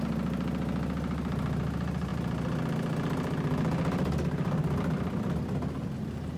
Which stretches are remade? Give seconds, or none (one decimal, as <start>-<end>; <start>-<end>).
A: none